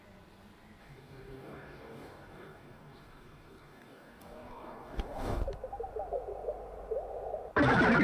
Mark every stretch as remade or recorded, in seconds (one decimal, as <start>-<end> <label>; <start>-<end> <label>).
0.0-0.8 recorded; 0.8-5.4 remade; 5.4-8.0 recorded